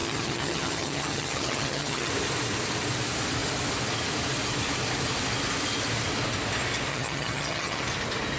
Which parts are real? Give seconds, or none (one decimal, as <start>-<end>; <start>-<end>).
2.1-6.9; 7.8-8.4